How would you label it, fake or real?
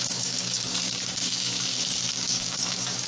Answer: fake